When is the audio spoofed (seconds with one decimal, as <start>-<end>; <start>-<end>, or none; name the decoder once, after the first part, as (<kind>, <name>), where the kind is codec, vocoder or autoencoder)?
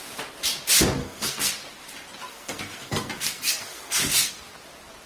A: 1.0-1.5 (codec, SNAC); 2.3-4.4